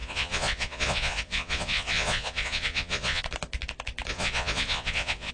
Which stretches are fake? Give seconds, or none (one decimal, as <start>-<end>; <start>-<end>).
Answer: 0.0-3.2; 4.1-5.3